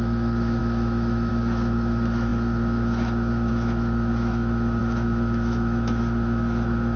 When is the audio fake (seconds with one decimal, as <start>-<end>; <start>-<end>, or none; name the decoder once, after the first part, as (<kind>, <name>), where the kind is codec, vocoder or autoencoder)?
0.0-7.0 (autoencoder, DAC-VAE)